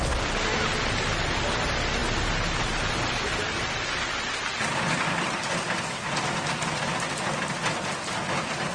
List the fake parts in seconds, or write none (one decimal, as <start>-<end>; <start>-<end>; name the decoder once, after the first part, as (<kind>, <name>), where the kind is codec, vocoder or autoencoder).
none